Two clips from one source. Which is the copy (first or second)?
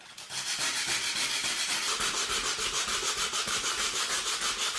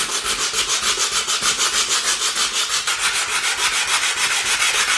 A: first